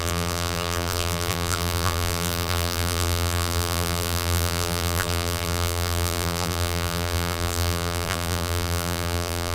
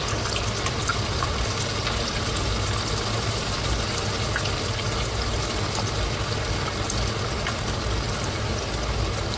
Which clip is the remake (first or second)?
first